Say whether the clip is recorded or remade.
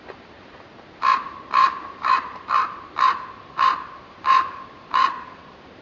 remade